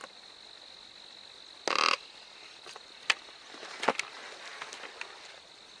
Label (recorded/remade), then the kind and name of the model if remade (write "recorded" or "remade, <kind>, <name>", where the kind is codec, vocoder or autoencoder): recorded